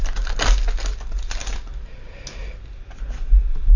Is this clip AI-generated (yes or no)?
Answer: no